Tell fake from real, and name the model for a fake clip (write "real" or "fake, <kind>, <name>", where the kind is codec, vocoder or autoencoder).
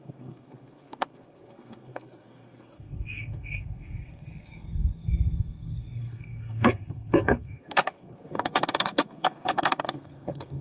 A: fake, codec, SNAC